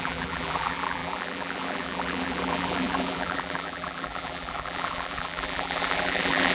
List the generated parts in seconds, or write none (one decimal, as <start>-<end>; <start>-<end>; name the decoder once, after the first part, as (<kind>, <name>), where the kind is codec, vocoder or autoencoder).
0.0-6.5 (vocoder, BigVGAN v2)